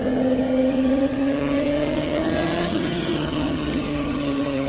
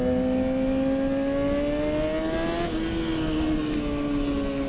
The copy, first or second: first